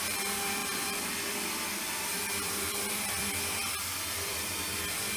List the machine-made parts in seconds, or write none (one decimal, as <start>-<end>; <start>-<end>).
0.0-5.2